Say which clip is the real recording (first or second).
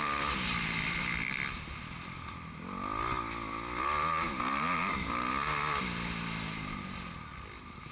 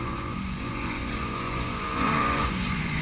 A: first